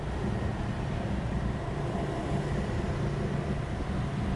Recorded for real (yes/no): yes